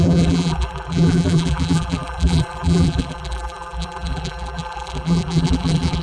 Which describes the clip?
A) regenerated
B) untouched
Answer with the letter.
A